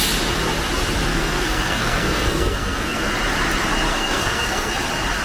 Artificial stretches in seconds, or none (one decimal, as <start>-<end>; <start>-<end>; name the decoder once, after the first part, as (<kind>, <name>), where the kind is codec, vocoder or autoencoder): 1.1-3.1 (codec, SNAC); 3.9-4.7